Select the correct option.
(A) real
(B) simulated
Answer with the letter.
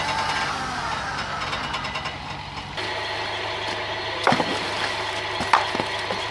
A